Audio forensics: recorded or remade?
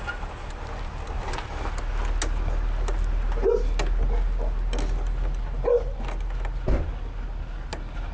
recorded